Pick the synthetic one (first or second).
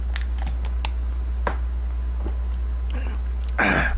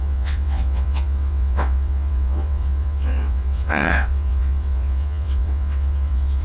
second